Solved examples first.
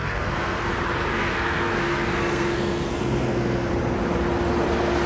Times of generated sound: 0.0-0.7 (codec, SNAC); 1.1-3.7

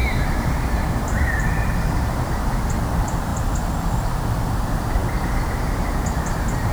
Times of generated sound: 0.0-2.5 (vocoder, BigVGAN v2)